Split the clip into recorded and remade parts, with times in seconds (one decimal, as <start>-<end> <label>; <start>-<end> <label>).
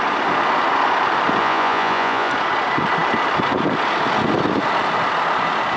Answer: 0.0-1.4 recorded; 1.4-2.3 remade; 2.3-5.8 recorded